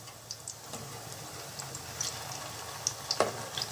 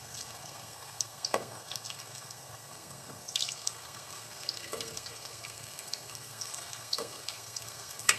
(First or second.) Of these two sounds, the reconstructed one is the second